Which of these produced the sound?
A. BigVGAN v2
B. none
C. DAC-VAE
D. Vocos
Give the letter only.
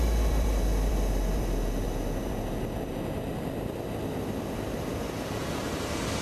B